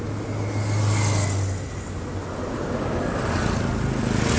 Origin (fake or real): real